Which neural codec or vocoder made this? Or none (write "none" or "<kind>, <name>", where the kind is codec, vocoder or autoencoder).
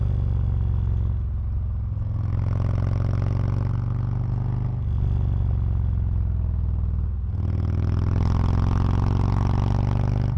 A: none